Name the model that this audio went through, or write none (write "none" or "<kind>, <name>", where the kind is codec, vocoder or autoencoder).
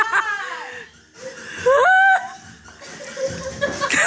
none